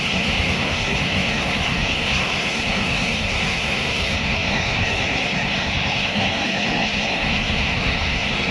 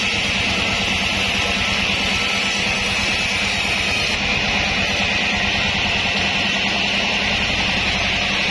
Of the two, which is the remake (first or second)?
first